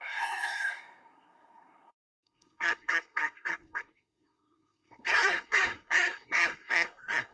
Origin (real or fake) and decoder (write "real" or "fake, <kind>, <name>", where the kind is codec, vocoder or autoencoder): fake, codec, SNAC